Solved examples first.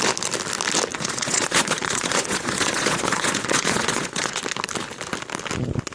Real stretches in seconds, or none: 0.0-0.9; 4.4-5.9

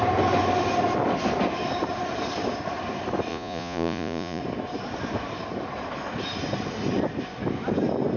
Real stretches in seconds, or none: 0.0-3.3; 4.4-8.2

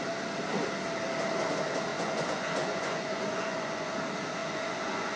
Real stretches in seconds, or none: 0.0-1.9; 3.9-4.4

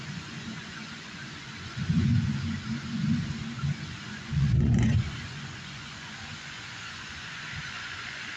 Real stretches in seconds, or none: none

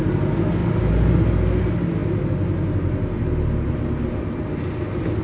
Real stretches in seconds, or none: 0.0-5.2